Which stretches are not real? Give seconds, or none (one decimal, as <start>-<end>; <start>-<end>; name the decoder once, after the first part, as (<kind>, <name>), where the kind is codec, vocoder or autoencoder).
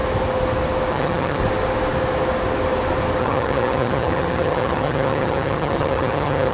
0.9-1.4 (vocoder, HiFi-GAN); 3.2-6.5